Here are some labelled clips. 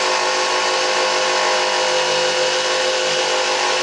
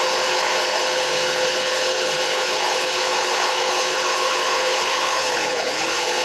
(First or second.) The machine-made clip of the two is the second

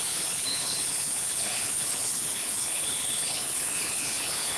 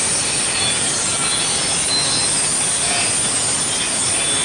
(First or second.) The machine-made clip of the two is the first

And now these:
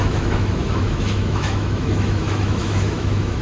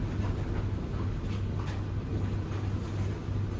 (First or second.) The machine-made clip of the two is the first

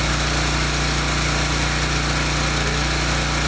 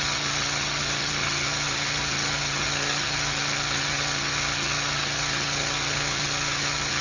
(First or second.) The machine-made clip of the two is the second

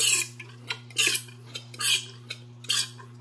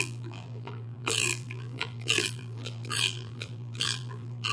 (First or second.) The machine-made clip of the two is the second